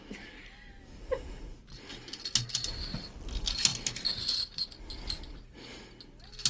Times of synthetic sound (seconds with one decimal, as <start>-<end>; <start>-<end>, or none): none